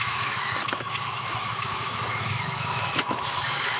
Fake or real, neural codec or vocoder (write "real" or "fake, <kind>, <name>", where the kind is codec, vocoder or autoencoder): fake, autoencoder, DAC-VAE